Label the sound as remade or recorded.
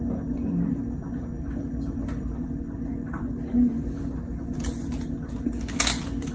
recorded